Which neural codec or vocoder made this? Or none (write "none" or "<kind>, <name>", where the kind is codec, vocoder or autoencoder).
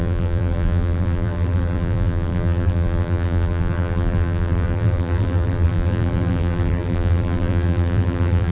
vocoder, BigVGAN v2